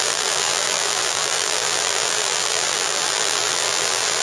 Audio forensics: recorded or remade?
remade